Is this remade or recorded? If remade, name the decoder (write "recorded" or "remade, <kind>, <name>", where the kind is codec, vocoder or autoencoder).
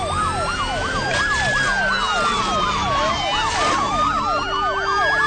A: recorded